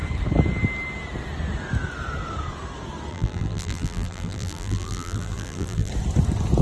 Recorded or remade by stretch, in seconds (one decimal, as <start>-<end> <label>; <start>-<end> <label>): 0.0-3.1 recorded; 3.1-5.9 remade; 5.9-6.6 recorded